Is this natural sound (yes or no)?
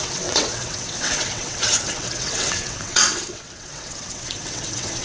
no